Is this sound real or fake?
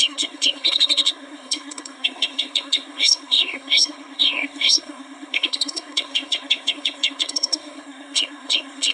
fake